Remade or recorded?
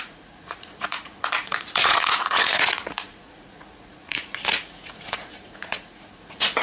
remade